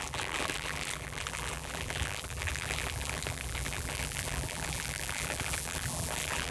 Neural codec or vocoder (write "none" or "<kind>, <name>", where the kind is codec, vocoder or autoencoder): vocoder, BigVGAN v2